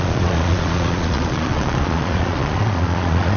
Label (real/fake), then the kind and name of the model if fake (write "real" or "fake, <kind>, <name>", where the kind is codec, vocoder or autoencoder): fake, vocoder, Vocos